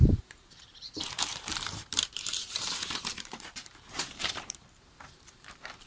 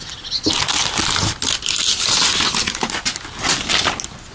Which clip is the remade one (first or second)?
first